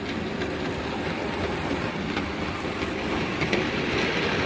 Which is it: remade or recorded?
recorded